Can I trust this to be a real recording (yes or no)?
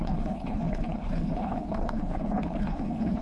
no